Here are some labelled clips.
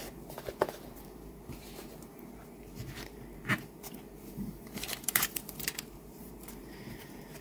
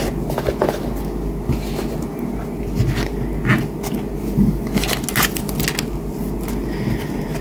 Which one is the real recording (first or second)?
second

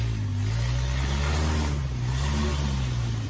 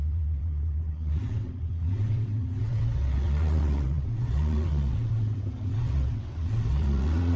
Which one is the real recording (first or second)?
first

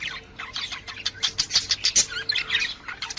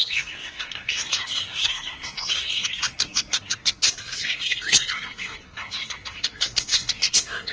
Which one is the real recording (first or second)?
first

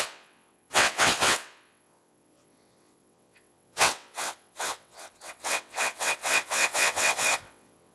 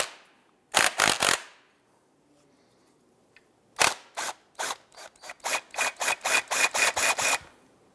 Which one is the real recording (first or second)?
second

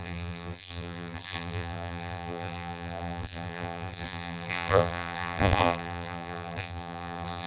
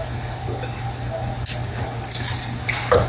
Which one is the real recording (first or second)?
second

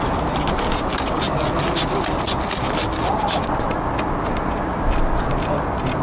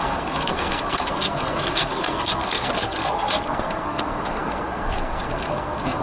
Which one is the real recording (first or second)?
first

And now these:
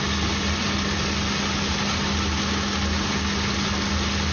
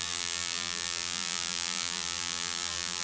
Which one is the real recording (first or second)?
first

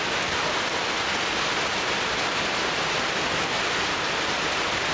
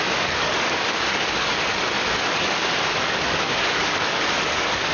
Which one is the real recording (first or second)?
first